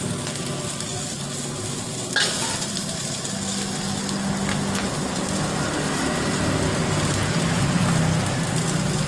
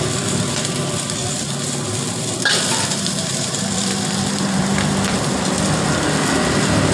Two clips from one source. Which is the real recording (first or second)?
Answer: first